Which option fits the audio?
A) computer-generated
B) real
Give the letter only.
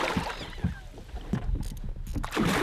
B